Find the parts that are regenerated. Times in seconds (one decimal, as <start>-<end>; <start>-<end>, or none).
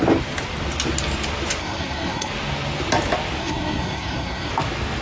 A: 1.6-2.3; 3.4-4.5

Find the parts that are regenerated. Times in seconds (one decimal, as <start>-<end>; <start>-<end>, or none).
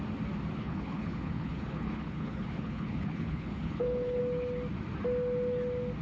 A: 0.6-4.2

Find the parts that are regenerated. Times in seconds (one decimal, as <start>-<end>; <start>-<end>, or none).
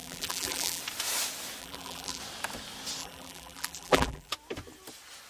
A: 0.0-0.8; 1.6-2.2; 3.0-4.3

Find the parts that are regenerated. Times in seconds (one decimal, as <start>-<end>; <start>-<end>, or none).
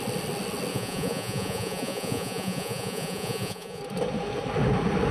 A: 0.7-3.8